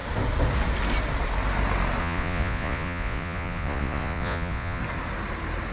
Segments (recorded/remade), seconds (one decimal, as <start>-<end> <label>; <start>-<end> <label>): 0.0-2.0 recorded; 2.0-4.8 remade; 4.8-5.7 recorded